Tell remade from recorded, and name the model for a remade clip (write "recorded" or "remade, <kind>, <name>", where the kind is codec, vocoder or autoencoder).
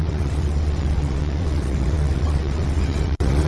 remade, vocoder, WaveNeXt